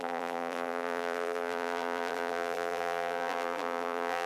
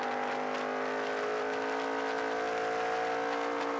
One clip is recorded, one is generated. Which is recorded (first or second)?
second